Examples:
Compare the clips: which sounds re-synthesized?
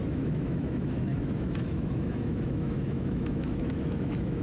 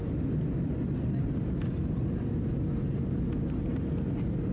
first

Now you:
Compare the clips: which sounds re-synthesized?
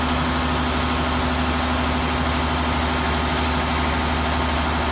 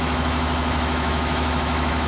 second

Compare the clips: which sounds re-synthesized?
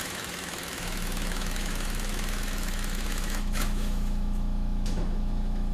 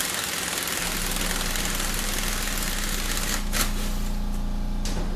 first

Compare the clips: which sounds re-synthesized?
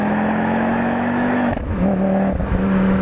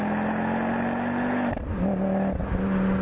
first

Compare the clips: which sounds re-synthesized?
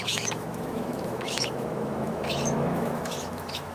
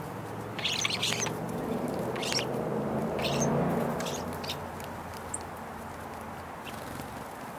first